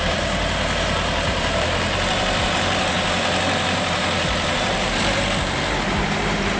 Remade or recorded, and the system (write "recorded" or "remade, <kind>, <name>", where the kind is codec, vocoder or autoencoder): remade, vocoder, BigVGAN v2